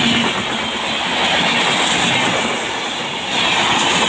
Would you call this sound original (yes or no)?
yes